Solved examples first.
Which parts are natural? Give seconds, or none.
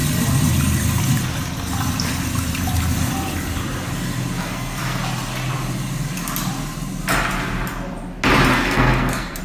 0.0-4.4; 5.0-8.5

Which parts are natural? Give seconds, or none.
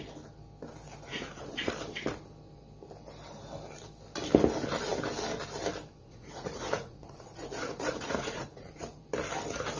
0.0-1.1; 1.7-6.0; 9.0-9.8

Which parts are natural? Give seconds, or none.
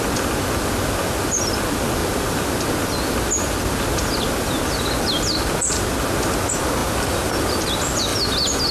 0.0-8.7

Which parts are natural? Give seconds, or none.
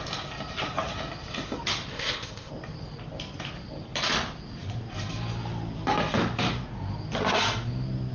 0.0-1.9; 2.5-8.1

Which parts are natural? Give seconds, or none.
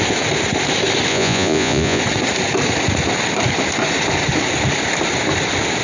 0.0-1.1; 2.0-5.8